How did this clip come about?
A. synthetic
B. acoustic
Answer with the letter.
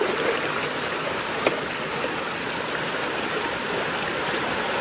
B